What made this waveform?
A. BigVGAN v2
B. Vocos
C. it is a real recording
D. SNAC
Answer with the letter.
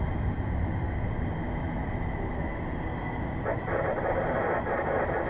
C